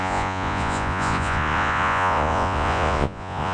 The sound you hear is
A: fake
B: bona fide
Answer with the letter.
A